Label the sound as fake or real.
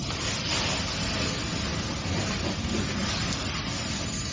real